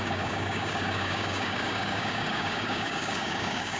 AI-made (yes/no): yes